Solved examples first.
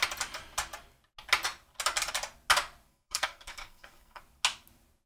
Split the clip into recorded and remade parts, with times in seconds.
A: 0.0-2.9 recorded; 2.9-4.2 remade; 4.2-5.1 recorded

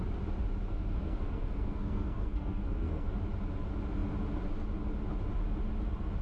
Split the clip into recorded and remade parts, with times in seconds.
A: 0.0-0.7 recorded; 0.7-3.1 remade; 3.1-6.2 recorded